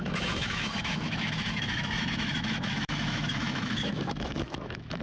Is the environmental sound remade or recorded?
remade